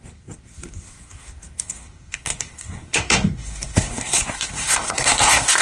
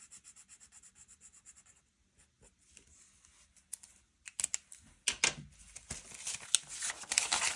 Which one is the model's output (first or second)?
first